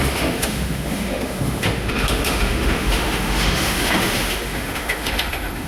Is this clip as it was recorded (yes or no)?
no